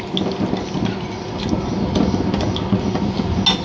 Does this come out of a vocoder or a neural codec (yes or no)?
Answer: no